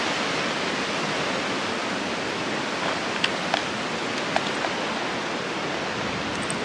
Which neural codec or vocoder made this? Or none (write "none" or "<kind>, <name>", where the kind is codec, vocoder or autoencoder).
none